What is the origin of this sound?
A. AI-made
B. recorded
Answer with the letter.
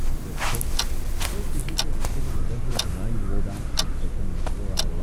B